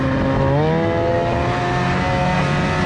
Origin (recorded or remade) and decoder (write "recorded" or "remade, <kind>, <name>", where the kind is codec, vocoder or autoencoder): recorded